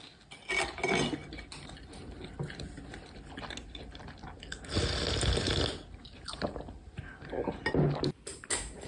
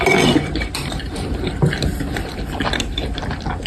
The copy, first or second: second